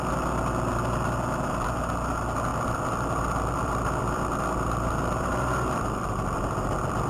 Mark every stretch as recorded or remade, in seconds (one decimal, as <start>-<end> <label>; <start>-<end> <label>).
0.0-2.5 recorded; 2.5-7.1 remade